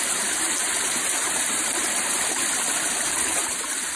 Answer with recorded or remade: remade